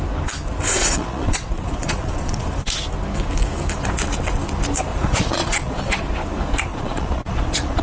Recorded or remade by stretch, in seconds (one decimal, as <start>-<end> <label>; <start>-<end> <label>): 0.0-0.8 recorded; 0.8-2.4 remade; 2.4-4.9 recorded; 4.9-6.0 remade; 6.0-6.7 recorded; 6.7-7.8 remade